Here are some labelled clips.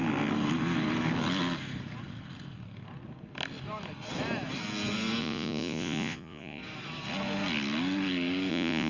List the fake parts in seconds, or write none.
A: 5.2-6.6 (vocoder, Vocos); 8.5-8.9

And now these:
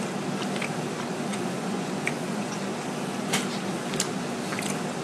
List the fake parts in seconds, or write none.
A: 1.3-2.6 (vocoder, Vocos)

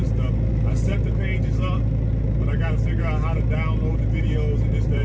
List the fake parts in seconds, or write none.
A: none

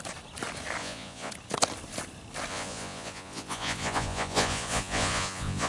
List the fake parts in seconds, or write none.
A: 0.8-1.3 (vocoder, Vocos); 2.5-5.7

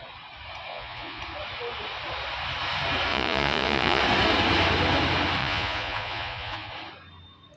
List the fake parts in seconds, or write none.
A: 0.7-1.2 (vocoder, Vocos); 3.1-4.0; 5.4-6.7

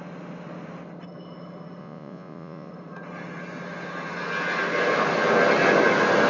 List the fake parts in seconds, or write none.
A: 1.8-2.7 (vocoder, Vocos)

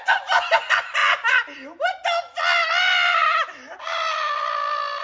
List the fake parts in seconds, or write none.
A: none

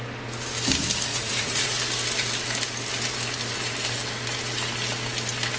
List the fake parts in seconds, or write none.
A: 1.1-1.7 (vocoder, Vocos)